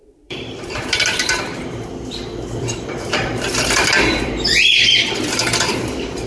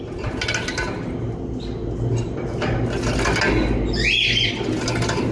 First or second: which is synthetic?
first